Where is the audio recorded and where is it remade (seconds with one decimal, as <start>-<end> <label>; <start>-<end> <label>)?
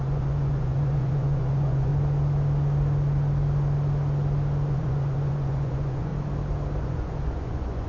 0.0-1.9 remade; 1.9-4.7 recorded; 4.7-6.1 remade; 6.1-6.8 recorded; 6.8-7.9 remade